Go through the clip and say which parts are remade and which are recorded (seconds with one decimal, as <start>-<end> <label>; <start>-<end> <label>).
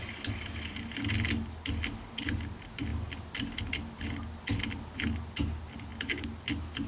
0.0-6.9 recorded